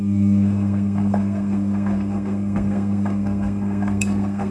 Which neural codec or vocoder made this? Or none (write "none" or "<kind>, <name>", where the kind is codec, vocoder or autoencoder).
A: codec, SNAC